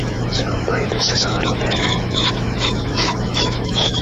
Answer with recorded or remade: remade